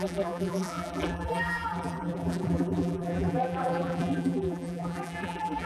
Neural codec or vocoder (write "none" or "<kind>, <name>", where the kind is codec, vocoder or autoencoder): vocoder, BigVGAN v2